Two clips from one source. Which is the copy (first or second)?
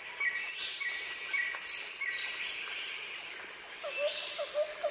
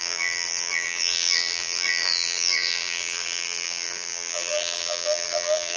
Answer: second